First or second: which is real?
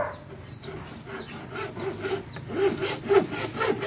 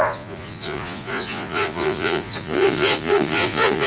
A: first